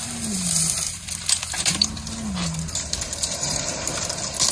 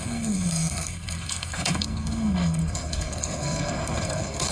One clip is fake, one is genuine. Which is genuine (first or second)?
first